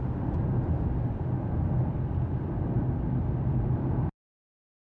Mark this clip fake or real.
real